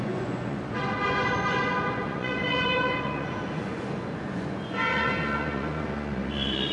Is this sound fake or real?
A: fake